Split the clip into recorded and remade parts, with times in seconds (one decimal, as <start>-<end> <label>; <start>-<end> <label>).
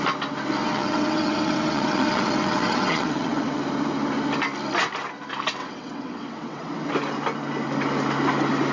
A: 0.0-0.6 recorded; 0.6-3.6 remade; 3.6-5.6 recorded; 5.6-6.9 remade; 6.9-8.7 recorded